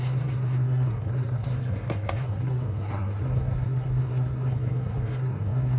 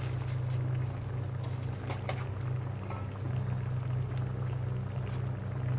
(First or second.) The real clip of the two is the second